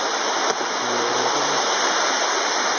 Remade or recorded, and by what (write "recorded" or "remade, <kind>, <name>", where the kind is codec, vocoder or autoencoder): recorded